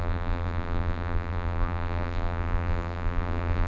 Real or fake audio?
fake